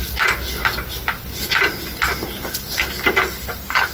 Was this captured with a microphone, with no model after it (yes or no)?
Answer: yes